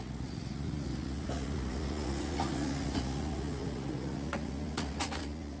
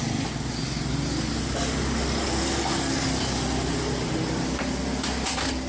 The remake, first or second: first